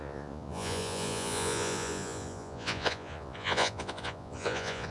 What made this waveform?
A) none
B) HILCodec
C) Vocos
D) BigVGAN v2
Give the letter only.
C